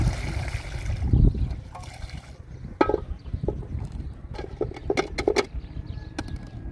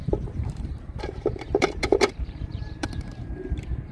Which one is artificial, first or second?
second